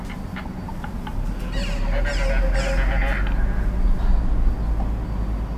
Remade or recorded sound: recorded